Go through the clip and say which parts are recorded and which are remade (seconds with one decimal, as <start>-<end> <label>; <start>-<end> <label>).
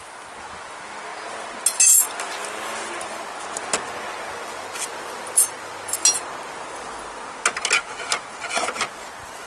0.0-9.5 recorded